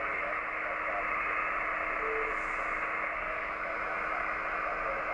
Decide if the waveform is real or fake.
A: real